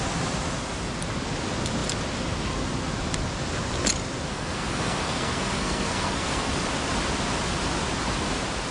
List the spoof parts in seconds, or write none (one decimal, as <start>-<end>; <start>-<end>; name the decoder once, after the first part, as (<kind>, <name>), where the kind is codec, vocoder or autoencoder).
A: 4.3-6.5 (codec, SNAC)